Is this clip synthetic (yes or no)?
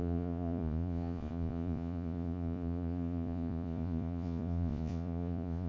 yes